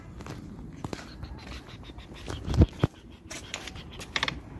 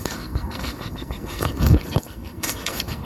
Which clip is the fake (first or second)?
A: second